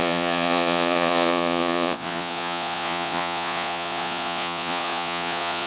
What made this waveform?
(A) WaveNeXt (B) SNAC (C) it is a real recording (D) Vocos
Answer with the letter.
D